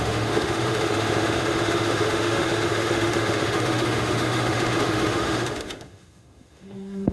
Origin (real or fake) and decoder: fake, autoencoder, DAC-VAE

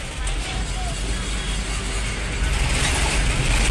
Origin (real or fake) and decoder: real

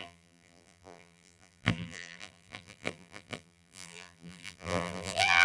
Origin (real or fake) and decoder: fake, vocoder, BigVGAN v2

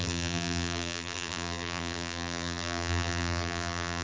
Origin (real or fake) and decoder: fake, vocoder, BigVGAN v2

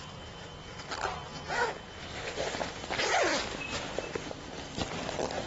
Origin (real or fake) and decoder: real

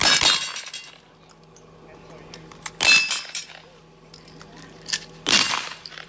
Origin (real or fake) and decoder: real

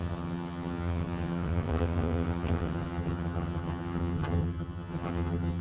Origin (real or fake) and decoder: fake, vocoder, HiFi-GAN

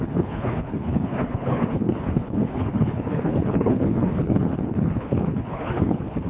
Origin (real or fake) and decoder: fake, codec, HILCodec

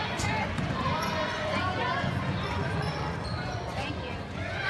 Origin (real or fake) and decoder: fake, vocoder, Vocos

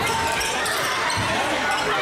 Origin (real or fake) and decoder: real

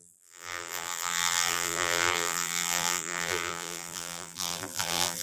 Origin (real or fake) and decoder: fake, vocoder, BigVGAN v2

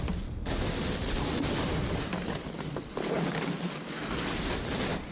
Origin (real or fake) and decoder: real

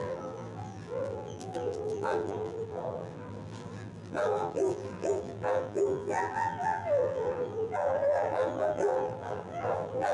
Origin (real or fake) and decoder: fake, vocoder, BigVGAN v2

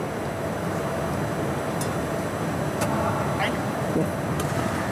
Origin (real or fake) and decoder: real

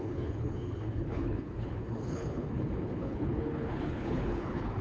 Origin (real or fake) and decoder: fake, codec, HILCodec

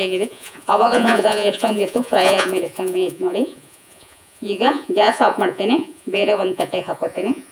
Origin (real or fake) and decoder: fake, vocoder, Vocos